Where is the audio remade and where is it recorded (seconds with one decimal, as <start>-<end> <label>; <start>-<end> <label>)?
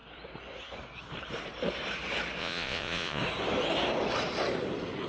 0.0-2.4 recorded; 2.4-3.2 remade; 3.2-5.1 recorded